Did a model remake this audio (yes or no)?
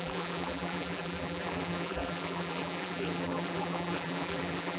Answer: yes